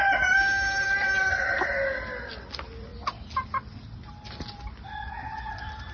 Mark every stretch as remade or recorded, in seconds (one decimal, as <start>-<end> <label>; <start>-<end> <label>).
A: 0.0-5.9 recorded